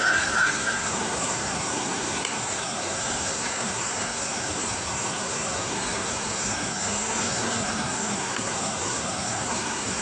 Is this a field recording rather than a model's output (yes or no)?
no